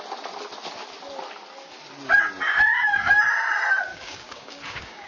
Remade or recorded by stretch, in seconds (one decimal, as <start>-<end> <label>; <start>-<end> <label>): 0.0-2.7 recorded; 2.7-3.2 remade; 3.2-3.9 recorded; 3.9-5.1 remade